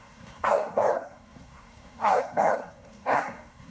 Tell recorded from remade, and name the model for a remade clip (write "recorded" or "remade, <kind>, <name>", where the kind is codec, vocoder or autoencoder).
remade, codec, SNAC